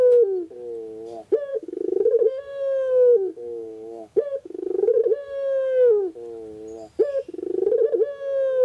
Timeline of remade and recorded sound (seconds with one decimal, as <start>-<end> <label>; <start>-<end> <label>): 0.0-1.5 recorded; 1.5-6.0 remade; 6.0-8.6 recorded